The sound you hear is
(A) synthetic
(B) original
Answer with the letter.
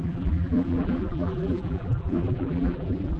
A